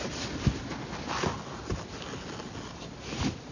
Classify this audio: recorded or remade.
recorded